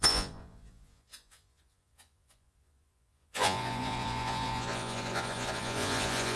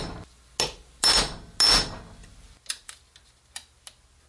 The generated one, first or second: first